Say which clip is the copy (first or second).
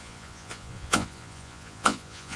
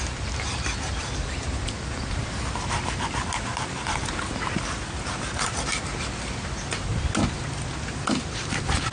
first